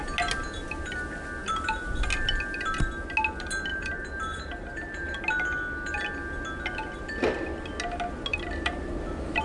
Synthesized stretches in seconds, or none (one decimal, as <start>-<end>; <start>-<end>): 1.4-2.0; 3.7-5.2; 8.3-9.0